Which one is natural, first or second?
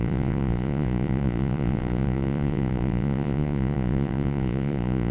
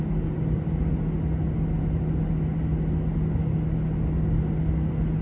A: second